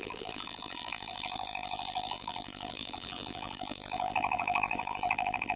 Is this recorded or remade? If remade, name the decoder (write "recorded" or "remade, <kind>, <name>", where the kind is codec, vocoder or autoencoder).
remade, vocoder, BigVGAN v2